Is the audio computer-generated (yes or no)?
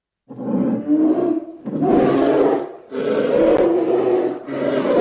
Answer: no